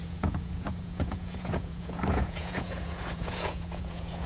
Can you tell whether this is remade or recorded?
remade